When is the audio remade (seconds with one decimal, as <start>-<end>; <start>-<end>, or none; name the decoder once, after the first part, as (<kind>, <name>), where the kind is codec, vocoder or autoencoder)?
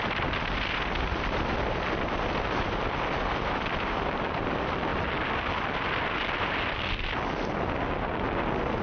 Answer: none